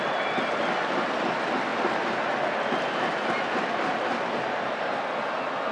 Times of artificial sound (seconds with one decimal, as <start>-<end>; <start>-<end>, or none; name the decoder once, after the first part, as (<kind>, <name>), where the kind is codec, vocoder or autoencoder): none